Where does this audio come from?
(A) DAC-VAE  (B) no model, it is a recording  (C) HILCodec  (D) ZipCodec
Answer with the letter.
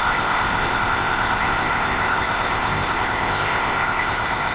D